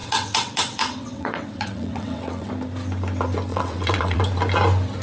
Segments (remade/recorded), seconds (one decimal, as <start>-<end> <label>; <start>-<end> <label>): 0.0-2.5 remade; 2.5-3.5 recorded; 3.5-4.2 remade; 4.2-5.0 recorded